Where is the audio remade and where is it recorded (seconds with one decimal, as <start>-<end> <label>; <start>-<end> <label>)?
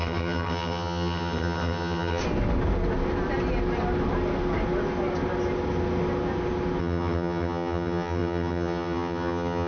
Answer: 0.0-2.2 remade; 2.2-6.8 recorded; 6.8-9.7 remade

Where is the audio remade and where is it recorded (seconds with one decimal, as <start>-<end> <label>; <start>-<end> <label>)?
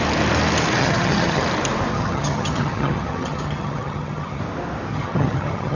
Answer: 0.0-0.8 recorded; 0.8-1.4 remade; 1.4-1.9 recorded; 1.9-4.4 remade; 4.4-4.9 recorded; 4.9-5.8 remade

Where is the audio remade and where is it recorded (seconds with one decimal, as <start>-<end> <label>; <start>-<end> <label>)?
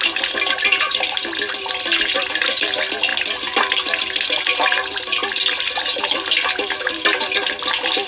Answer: 0.0-8.1 recorded